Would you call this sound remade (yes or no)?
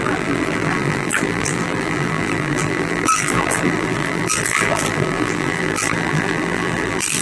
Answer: yes